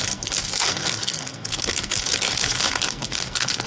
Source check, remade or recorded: remade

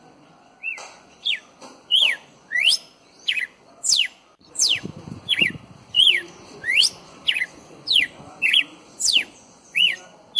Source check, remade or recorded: remade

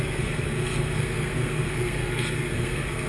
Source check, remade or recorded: remade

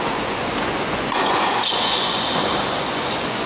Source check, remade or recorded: remade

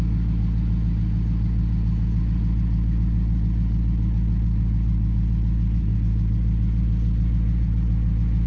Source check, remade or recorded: recorded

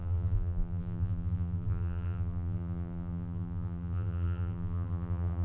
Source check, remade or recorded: remade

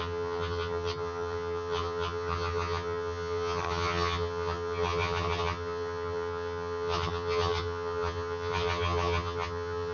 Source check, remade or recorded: remade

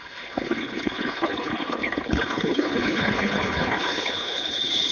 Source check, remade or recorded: remade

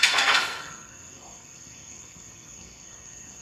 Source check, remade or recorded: remade